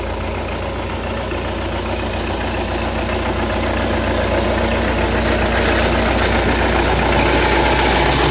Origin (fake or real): real